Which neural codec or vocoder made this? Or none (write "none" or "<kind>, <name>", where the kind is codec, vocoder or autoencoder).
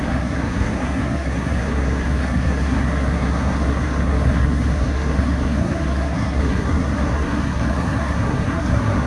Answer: codec, SNAC